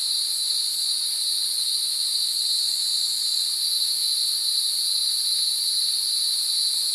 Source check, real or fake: real